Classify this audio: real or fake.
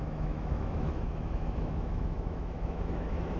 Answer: fake